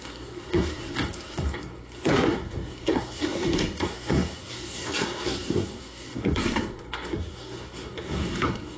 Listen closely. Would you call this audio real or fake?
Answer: fake